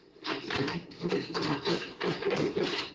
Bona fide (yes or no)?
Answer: no